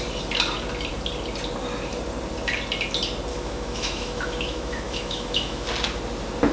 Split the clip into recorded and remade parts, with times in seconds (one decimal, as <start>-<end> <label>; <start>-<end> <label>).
0.0-3.3 recorded; 3.3-5.7 remade; 5.7-6.5 recorded